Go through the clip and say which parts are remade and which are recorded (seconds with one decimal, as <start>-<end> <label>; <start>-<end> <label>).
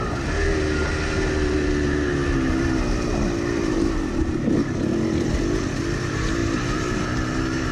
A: 0.0-7.7 recorded